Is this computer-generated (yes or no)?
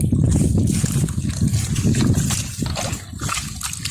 no